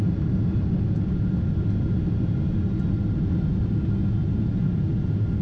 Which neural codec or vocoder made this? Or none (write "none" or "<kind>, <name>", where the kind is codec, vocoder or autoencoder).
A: none